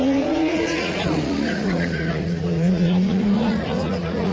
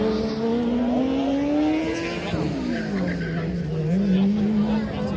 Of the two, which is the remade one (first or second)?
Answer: first